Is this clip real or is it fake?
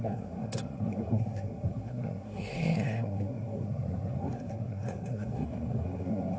fake